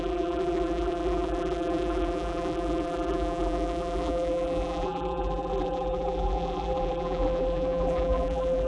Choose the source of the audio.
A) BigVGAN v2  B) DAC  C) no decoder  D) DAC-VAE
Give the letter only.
A